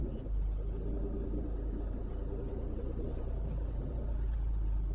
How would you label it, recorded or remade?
recorded